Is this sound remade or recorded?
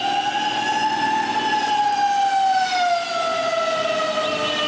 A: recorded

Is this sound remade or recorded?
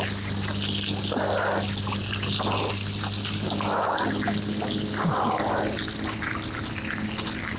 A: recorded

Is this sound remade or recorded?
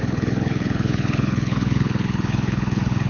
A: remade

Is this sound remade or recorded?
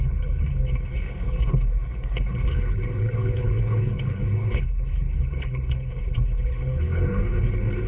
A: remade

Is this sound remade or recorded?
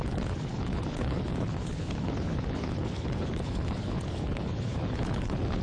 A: remade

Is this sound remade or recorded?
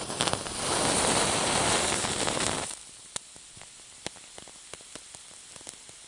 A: recorded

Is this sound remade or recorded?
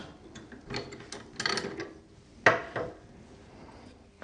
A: recorded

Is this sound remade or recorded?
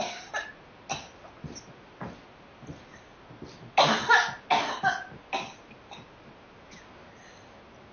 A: recorded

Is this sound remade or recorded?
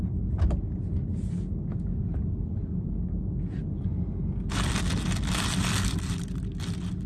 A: recorded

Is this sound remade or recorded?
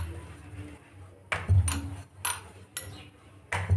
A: recorded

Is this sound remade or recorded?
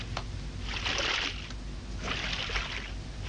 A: recorded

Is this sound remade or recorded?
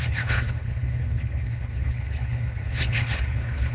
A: remade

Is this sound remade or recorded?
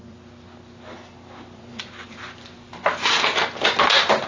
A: recorded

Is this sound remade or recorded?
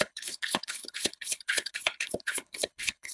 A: remade